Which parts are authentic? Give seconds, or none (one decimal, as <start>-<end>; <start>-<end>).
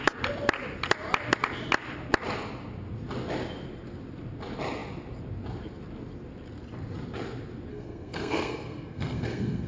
0.0-7.7